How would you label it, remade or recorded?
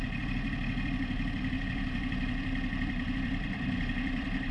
remade